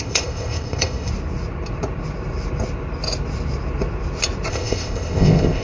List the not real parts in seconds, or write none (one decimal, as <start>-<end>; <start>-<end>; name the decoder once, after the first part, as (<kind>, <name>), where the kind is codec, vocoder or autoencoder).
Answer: 0.0-1.1 (codec, ZipCodec); 4.5-5.6